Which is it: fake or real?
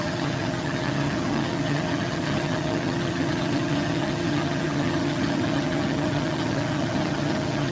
fake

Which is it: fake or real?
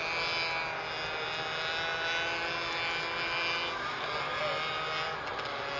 real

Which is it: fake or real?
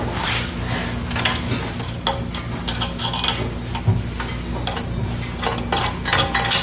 real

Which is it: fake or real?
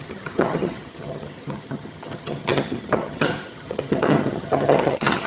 fake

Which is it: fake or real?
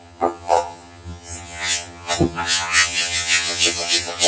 fake